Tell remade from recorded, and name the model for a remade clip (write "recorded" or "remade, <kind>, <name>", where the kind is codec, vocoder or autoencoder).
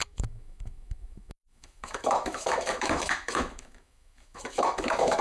remade, autoencoder, DAC-VAE